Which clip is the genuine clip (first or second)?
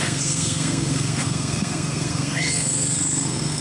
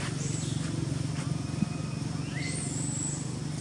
second